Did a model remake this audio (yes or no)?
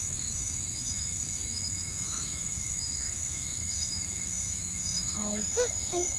yes